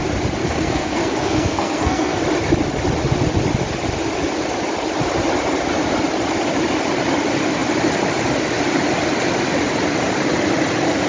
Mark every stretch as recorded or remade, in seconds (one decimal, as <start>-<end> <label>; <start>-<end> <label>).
0.0-0.4 recorded; 0.4-2.2 remade; 2.2-11.1 recorded